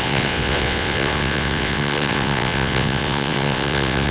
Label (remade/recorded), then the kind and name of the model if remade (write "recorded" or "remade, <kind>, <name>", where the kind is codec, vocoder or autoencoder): remade, vocoder, WaveNeXt